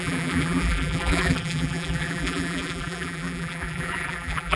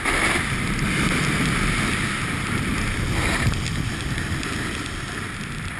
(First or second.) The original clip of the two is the second